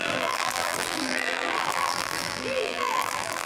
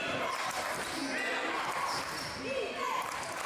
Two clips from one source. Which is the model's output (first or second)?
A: first